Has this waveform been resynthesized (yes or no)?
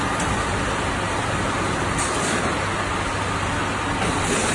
no